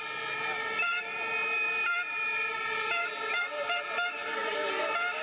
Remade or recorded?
recorded